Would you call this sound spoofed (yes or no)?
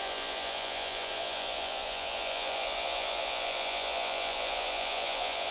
yes